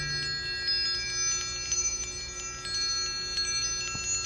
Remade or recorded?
recorded